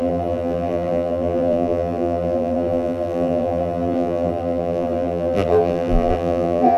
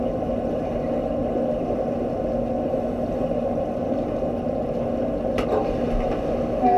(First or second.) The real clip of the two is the second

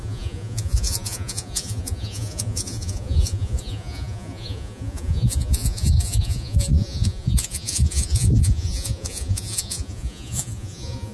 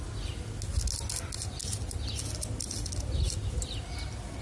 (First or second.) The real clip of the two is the second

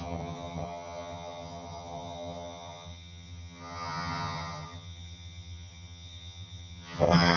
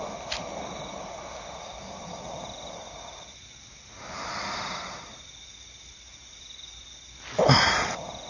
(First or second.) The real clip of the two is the second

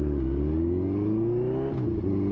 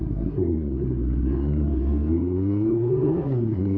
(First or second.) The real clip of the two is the first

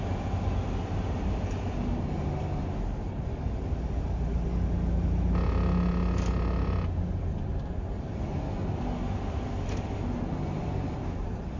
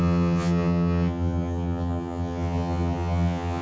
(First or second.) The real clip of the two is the first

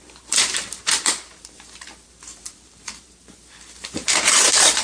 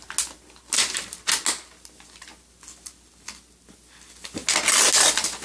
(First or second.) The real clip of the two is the second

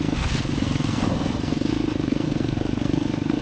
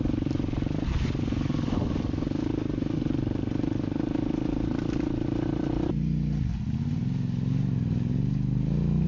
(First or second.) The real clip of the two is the second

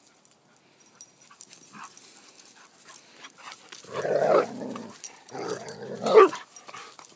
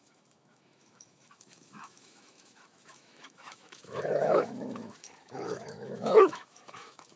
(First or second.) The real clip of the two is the first